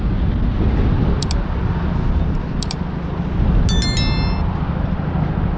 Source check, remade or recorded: recorded